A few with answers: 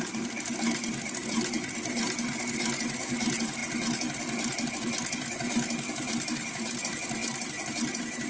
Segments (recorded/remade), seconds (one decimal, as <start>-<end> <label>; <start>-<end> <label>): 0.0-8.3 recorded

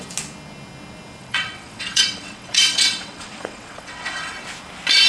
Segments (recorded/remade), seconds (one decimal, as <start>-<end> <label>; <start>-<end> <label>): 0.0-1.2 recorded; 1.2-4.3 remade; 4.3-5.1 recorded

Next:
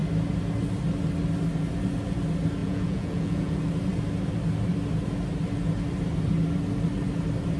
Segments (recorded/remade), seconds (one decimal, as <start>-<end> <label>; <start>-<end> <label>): 0.0-2.6 recorded; 2.6-3.6 remade; 3.6-7.6 recorded

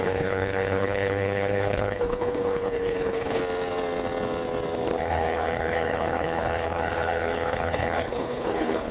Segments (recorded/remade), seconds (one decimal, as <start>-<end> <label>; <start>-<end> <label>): 0.0-3.4 remade; 3.4-5.0 recorded; 5.0-8.9 remade

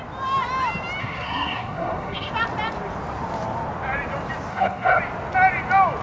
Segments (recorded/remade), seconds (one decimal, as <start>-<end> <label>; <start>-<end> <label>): 0.0-1.0 recorded; 1.0-2.3 remade; 2.3-4.5 recorded; 4.5-5.0 remade; 5.0-6.0 recorded

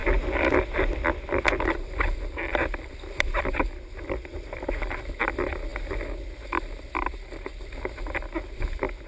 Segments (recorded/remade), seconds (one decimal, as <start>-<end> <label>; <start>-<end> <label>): 0.0-5.1 remade; 5.1-9.1 recorded